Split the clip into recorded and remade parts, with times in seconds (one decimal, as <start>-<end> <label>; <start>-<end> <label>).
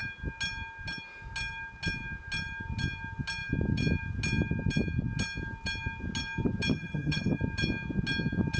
0.0-6.7 recorded; 6.7-7.4 remade; 7.4-8.6 recorded